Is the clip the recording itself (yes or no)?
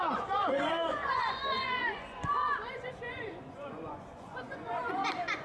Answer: no